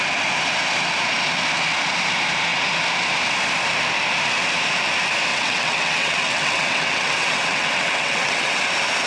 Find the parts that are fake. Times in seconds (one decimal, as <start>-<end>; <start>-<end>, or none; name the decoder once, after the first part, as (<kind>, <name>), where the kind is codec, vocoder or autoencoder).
5.3-8.7 (vocoder, WaveNeXt)

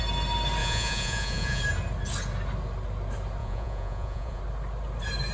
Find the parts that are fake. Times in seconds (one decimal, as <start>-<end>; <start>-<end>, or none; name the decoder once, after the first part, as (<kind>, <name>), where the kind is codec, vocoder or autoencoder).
0.6-1.6 (vocoder, Vocos); 3.4-4.4

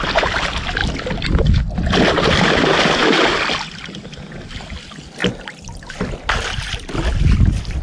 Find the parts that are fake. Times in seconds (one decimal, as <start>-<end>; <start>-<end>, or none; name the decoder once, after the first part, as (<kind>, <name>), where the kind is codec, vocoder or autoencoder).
0.8-1.4 (vocoder, BigVGAN v2); 3.0-4.0

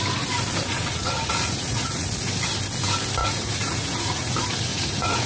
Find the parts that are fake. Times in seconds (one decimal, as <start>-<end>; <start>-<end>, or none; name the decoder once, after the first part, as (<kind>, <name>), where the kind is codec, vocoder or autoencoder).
0.7-2.1 (vocoder, Vocos); 3.2-4.3; 4.7-5.3

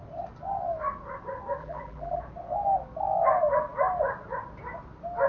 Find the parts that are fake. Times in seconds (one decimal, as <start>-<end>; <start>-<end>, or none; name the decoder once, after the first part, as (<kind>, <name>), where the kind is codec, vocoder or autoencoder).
1.6-2.2 (vocoder, BigVGAN v2)

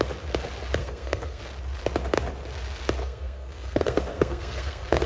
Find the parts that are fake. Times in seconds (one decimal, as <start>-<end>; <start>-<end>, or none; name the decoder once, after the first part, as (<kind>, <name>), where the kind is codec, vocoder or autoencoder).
0.8-1.4 (codec, SNAC); 3.0-5.1

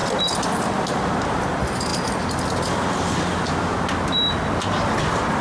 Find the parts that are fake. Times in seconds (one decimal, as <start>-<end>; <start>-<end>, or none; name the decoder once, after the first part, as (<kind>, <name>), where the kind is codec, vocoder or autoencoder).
none